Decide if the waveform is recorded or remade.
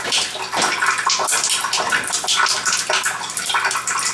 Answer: recorded